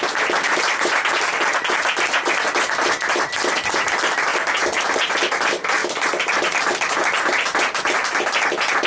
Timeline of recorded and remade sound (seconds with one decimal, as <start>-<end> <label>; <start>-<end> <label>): 0.0-8.9 recorded